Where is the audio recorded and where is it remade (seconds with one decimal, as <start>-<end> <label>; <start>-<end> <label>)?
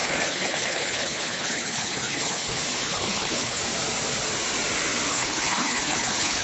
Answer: 0.0-3.6 remade; 3.6-5.1 recorded; 5.1-6.4 remade